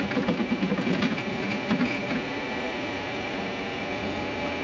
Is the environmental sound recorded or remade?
recorded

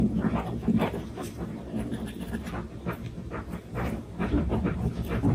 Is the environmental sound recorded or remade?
remade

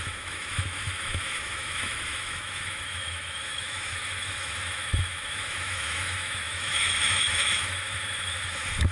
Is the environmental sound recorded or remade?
remade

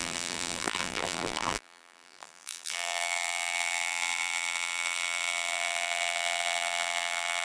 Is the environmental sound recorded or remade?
remade